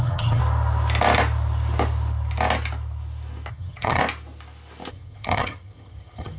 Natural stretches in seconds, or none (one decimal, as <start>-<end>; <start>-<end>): 0.4-3.5; 4.0-4.9